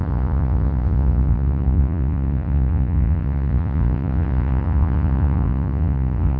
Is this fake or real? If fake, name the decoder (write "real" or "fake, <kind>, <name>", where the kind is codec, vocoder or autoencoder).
fake, vocoder, Vocos